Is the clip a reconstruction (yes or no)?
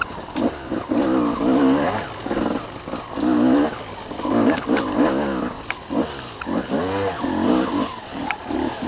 no